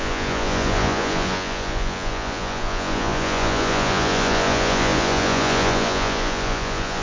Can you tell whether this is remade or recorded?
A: remade